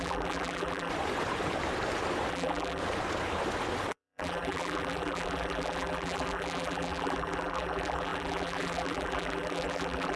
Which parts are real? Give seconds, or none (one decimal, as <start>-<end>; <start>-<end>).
0.9-2.3; 2.8-3.9